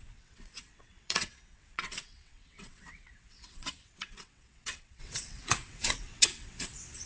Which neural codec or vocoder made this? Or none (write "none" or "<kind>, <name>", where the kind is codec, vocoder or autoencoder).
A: vocoder, WaveNeXt